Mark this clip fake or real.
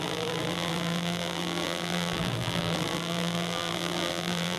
fake